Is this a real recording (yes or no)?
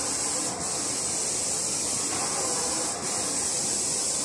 yes